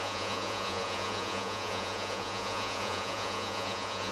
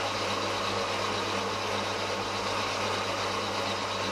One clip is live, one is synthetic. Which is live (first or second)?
second